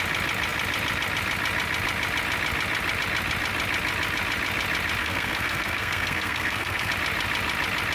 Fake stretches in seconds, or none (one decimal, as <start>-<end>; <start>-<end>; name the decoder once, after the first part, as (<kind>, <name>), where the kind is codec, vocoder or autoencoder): 5.0-6.9 (codec, SNAC)